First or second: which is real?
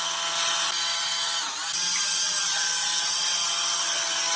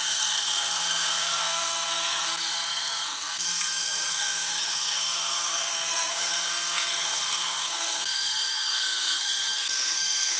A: first